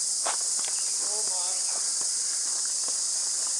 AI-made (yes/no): no